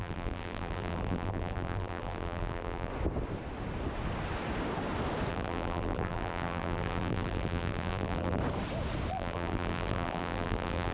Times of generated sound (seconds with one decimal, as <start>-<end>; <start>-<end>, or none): 0.0-2.9; 5.3-8.4; 9.1-10.9